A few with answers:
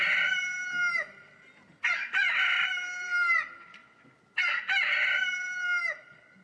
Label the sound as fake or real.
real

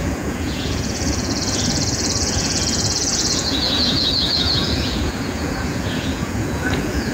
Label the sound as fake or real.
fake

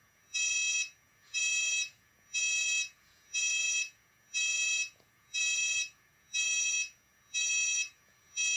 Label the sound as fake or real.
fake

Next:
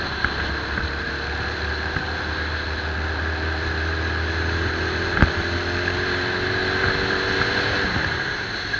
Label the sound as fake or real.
real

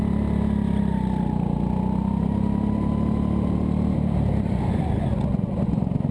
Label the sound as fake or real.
real